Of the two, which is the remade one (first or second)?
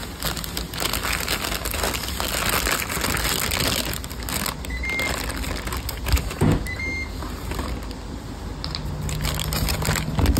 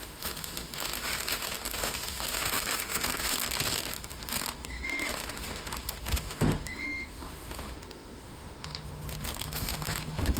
second